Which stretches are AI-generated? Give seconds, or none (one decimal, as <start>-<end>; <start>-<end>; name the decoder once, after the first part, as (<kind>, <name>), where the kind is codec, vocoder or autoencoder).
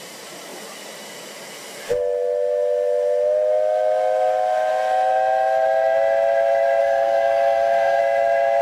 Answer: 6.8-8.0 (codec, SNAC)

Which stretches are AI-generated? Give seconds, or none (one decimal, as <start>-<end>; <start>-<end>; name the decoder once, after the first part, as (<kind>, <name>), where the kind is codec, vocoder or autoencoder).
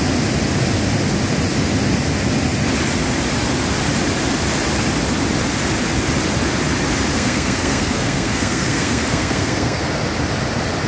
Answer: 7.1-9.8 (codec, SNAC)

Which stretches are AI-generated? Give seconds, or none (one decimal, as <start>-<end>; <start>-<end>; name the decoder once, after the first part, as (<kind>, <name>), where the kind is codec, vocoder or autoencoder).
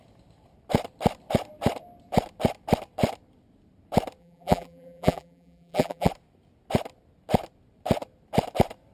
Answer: 4.2-6.1 (vocoder, BigVGAN v2)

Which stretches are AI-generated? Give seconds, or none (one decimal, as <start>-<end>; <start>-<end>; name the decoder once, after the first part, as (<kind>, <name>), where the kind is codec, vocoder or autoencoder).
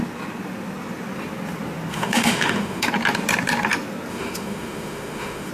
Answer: 1.9-2.9 (autoencoder, DAC-VAE); 4.1-5.5